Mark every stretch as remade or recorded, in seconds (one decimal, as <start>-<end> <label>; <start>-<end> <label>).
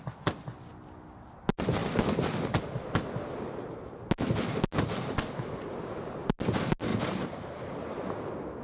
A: 0.0-6.9 recorded; 6.9-7.7 remade; 7.7-8.6 recorded